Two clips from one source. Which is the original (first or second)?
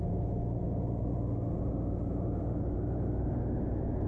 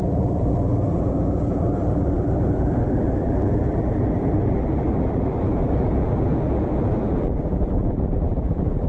first